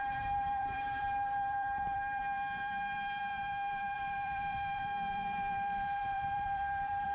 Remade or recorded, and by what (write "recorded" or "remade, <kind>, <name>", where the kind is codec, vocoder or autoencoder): remade, vocoder, BigVGAN v2